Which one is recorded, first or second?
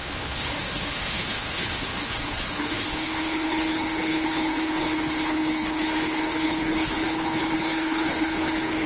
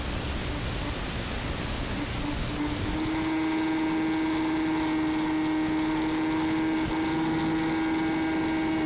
second